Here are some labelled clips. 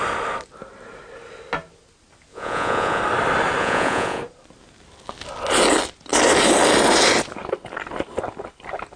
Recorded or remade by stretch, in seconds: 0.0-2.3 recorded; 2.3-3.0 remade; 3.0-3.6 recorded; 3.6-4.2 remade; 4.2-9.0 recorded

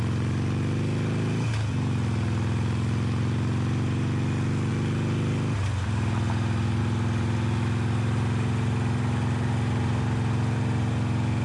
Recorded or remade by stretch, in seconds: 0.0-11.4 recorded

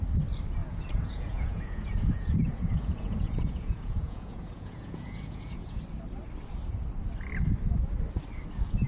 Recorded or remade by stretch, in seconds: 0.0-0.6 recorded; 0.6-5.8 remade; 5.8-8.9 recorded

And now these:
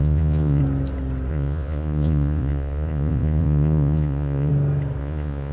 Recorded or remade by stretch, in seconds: 0.0-0.6 remade; 0.6-1.3 recorded; 1.3-4.5 remade; 4.5-5.0 recorded; 5.0-5.5 remade

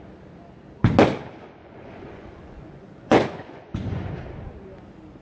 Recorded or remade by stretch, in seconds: 0.0-1.6 recorded; 1.6-4.1 remade; 4.1-5.2 recorded

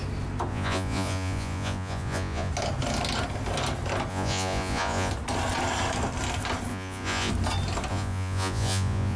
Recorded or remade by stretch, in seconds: 0.0-0.5 recorded; 0.5-2.5 remade; 2.5-4.1 recorded; 4.1-5.1 remade; 5.1-6.7 recorded; 6.7-7.3 remade; 7.3-7.9 recorded; 7.9-9.2 remade

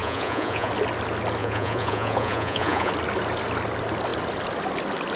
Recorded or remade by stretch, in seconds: 0.0-0.7 remade; 0.7-1.4 recorded; 1.4-2.9 remade; 2.9-5.2 recorded

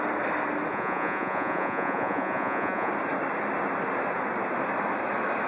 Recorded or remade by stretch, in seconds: 0.0-0.7 recorded; 0.7-2.9 remade; 2.9-5.5 recorded